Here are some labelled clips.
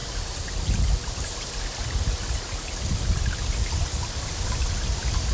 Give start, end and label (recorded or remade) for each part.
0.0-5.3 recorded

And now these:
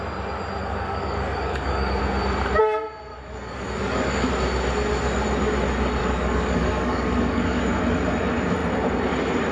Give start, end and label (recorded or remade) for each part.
0.0-0.6 recorded; 0.6-2.0 remade; 2.0-3.1 recorded; 3.1-4.3 remade; 4.3-6.0 recorded; 6.0-7.8 remade; 7.8-9.5 recorded

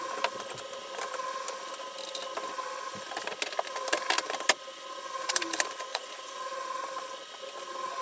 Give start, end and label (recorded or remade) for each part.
0.0-5.9 recorded; 5.9-6.4 remade; 6.4-8.0 recorded